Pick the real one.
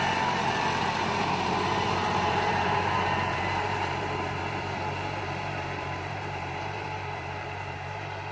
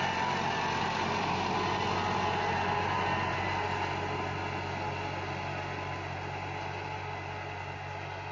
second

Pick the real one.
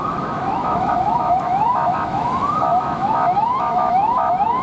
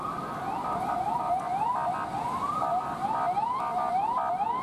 second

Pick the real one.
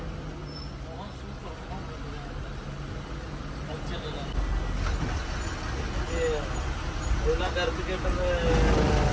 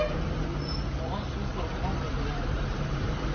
first